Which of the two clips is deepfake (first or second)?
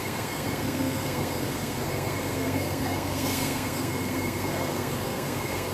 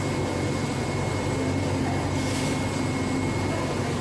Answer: first